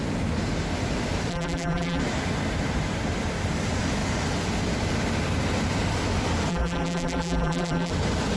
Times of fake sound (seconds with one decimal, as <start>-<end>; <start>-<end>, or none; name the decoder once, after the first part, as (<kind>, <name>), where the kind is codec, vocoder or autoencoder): 1.3-2.0 (vocoder, BigVGAN v2); 6.5-7.9